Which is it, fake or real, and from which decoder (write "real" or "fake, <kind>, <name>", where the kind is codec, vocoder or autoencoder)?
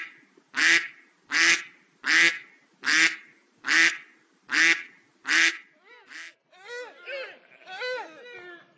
real